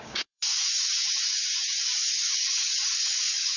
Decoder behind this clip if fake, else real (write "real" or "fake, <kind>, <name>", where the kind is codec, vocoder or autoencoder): fake, codec, DAC